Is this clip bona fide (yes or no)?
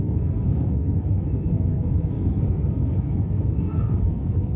no